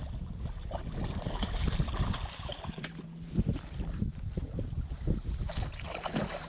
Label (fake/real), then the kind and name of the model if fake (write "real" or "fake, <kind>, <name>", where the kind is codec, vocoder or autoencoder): real